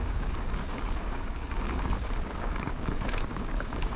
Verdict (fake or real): fake